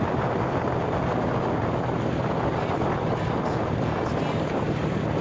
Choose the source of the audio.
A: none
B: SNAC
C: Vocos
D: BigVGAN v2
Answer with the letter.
A